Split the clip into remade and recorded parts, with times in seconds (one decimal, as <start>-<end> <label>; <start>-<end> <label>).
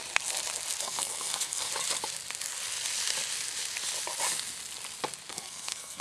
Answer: 0.0-0.8 recorded; 0.8-1.7 remade; 1.7-5.3 recorded; 5.3-6.0 remade